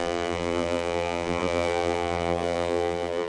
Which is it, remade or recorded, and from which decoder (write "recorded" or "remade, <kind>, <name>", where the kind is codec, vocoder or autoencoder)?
remade, vocoder, BigVGAN v2